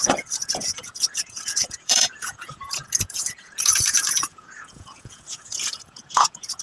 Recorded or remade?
remade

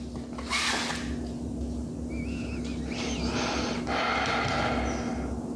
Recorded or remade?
recorded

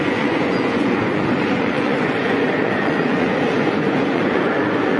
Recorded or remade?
remade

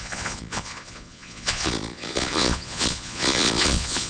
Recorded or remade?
remade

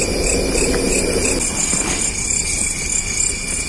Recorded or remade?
recorded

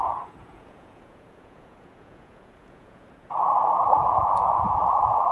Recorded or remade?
remade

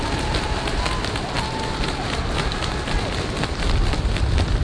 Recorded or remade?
recorded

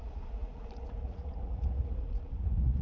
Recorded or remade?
remade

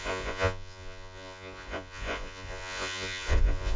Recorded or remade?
remade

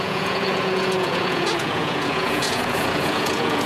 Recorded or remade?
remade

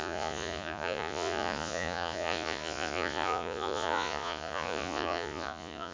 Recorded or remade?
remade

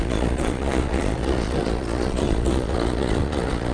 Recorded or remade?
remade